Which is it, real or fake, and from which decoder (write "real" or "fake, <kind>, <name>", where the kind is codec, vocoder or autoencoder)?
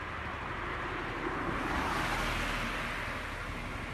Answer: real